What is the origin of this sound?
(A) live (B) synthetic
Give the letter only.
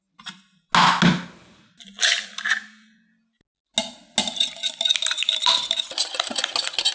A